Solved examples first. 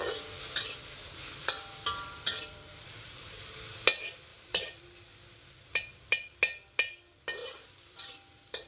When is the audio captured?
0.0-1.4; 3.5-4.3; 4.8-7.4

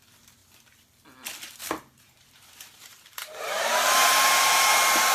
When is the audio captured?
0.4-2.0

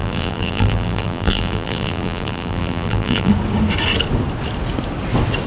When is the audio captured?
3.3-5.5

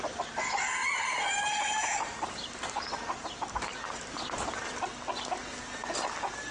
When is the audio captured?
0.0-0.8; 4.7-6.5

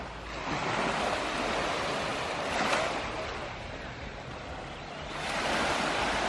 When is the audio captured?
0.0-6.3